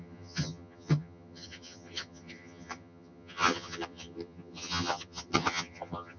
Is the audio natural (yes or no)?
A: no